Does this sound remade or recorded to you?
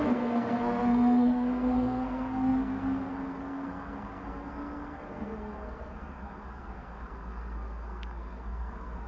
remade